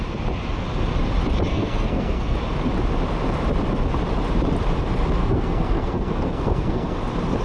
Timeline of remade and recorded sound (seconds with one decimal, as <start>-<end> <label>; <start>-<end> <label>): 0.0-1.5 recorded; 1.5-2.4 remade; 2.4-5.2 recorded; 5.2-7.0 remade; 7.0-7.4 recorded